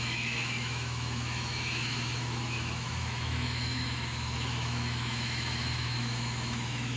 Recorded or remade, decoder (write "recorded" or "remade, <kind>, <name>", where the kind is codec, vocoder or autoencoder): remade, autoencoder, DAC-VAE